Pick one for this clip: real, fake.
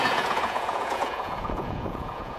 fake